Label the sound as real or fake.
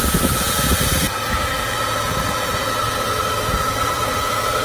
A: fake